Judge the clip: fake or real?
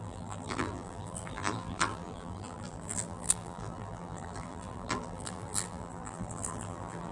fake